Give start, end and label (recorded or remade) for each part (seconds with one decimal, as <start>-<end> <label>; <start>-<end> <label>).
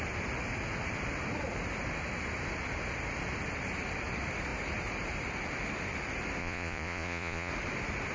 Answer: 0.0-6.4 recorded; 6.4-7.5 remade; 7.5-8.1 recorded